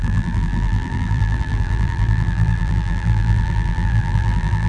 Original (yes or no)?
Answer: no